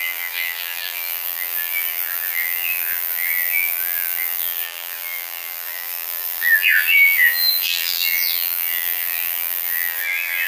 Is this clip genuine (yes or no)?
no